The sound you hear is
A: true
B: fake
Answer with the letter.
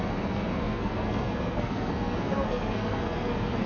B